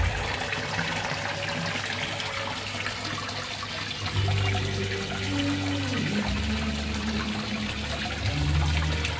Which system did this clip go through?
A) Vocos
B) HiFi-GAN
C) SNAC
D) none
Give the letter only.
D